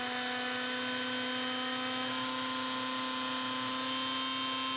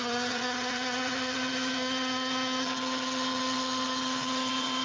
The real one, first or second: first